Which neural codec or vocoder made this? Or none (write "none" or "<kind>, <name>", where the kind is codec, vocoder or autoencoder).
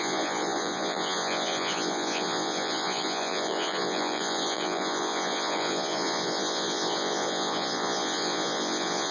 vocoder, Vocos